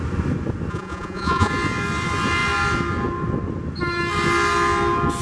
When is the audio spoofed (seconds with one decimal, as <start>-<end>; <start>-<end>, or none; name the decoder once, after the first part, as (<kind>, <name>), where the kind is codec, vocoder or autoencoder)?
0.7-1.5 (vocoder, Vocos)